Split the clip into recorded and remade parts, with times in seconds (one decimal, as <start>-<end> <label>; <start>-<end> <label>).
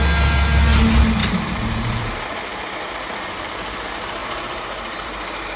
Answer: 0.0-1.2 recorded; 1.2-2.1 remade; 2.1-4.2 recorded; 4.2-5.6 remade